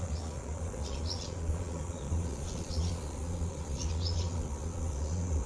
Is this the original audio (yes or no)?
no